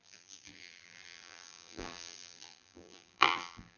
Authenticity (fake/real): fake